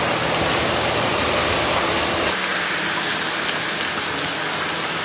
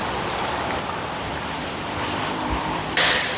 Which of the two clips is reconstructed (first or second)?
second